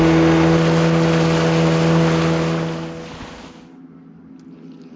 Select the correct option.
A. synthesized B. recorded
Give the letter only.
B